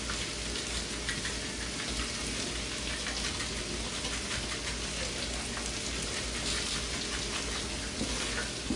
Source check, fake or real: real